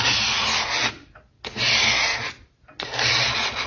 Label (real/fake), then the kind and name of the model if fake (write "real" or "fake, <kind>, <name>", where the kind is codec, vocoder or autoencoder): real